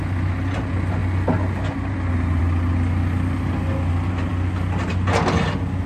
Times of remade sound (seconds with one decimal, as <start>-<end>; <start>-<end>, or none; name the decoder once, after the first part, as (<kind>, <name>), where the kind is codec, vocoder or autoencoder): none